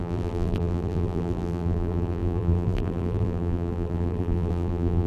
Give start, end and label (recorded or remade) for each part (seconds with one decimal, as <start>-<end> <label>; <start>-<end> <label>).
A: 0.0-5.1 remade